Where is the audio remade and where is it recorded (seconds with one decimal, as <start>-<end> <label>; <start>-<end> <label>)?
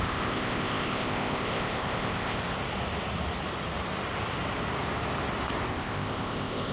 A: 0.0-2.4 remade; 2.4-5.7 recorded; 5.7-6.7 remade